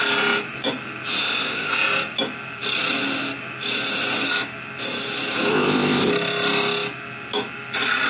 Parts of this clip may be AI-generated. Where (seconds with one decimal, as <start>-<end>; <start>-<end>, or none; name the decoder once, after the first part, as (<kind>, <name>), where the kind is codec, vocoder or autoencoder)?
1.2-1.7 (codec, ZipCodec); 5.5-6.1